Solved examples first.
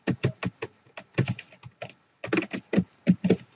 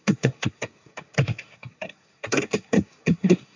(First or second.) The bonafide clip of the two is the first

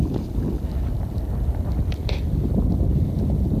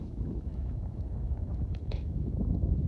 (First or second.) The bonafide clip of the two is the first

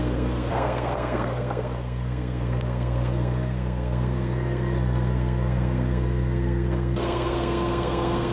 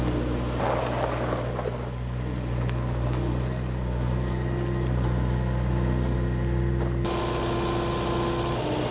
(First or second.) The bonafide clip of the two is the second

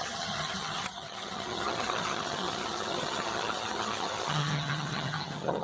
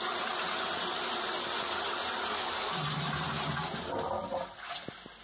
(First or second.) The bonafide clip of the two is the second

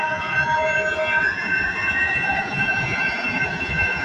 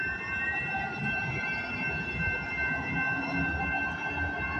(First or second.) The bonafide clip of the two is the second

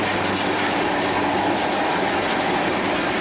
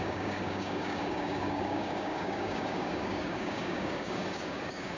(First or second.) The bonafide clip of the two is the first